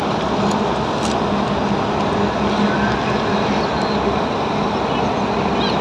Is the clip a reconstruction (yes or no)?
no